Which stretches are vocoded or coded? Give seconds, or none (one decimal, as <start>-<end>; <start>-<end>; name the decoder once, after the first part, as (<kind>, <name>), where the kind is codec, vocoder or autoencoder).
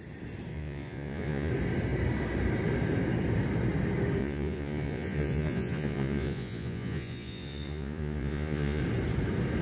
0.5-1.5 (vocoder, Vocos); 4.2-8.8